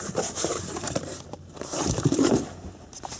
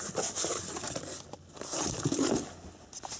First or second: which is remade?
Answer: first